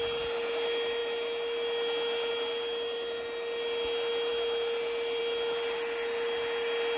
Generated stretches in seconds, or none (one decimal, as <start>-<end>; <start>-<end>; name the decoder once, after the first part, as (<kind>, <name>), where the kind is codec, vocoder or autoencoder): none